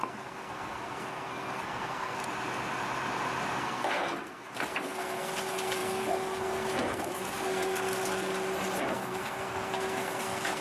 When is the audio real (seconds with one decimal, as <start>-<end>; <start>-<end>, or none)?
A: 2.2-3.6; 8.3-8.9